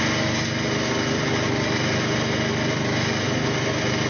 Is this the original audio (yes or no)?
yes